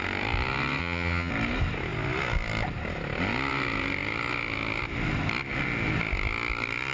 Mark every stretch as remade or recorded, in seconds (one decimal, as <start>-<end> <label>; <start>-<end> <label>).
0.0-0.8 recorded; 0.8-1.3 remade; 1.3-6.9 recorded